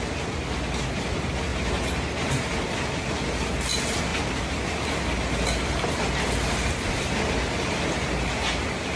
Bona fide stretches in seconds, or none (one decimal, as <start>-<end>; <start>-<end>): 0.0-1.5; 2.8-4.1; 4.6-9.0